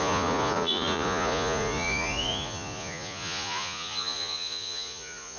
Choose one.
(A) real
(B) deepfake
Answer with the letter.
B